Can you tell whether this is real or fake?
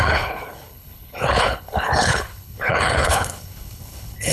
fake